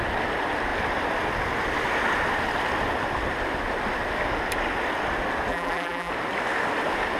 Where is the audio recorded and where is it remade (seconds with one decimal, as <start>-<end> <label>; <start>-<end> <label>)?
0.0-5.5 recorded; 5.5-6.1 remade; 6.1-7.2 recorded